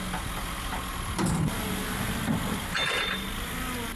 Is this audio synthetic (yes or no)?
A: no